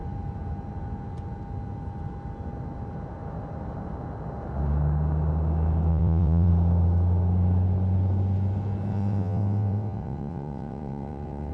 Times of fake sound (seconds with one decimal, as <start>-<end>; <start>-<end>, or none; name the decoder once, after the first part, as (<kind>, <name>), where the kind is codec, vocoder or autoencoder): 5.9-6.5 (vocoder, WaveNeXt); 8.9-11.5